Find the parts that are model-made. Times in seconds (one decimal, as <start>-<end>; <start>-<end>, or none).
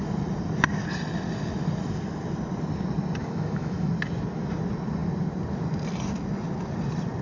3.2-3.9